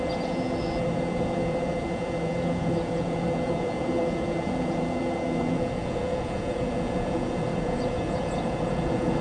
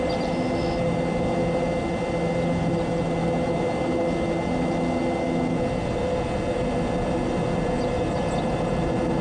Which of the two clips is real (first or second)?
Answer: second